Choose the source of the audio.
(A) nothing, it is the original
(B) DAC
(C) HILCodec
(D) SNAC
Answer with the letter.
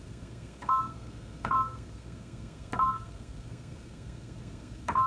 D